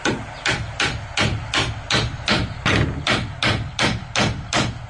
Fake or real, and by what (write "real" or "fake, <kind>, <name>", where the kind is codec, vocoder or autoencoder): real